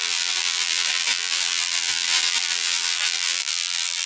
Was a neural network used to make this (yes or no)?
yes